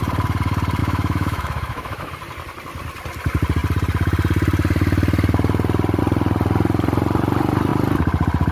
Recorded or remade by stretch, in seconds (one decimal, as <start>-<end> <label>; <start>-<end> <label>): 0.0-0.8 recorded; 0.8-2.1 remade; 2.1-8.5 recorded